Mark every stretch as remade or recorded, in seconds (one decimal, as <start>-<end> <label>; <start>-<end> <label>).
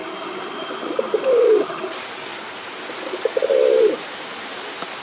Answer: 0.0-1.4 remade; 1.4-2.3 recorded; 2.3-2.8 remade; 2.8-5.0 recorded